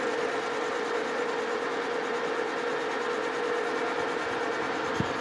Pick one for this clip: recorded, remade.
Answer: recorded